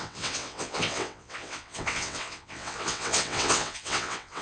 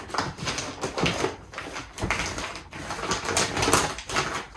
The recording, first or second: second